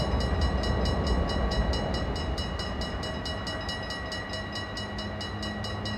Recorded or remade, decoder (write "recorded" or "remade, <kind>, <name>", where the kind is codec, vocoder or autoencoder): recorded